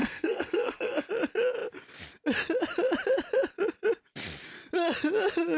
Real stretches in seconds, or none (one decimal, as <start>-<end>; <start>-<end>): 1.1-5.6